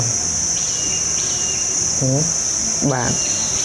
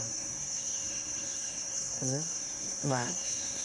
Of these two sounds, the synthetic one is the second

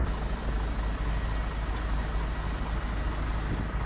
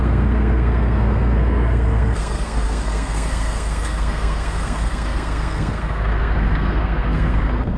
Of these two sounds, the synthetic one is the second